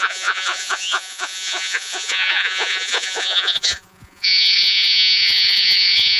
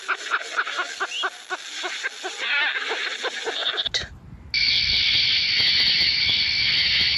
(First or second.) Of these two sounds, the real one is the second